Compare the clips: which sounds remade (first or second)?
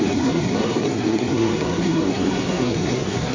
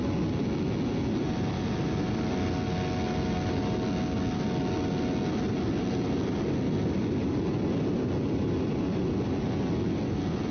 first